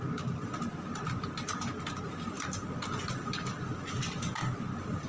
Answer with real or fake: real